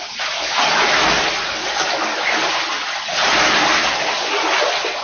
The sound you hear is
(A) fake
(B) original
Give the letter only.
B